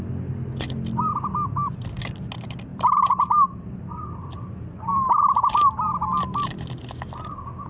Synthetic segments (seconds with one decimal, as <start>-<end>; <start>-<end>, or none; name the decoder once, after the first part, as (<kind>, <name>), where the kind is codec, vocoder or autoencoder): 2.7-5.4 (vocoder, BigVGAN v2)